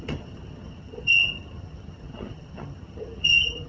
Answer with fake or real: fake